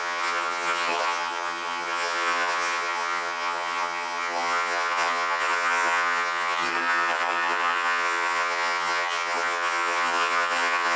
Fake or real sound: fake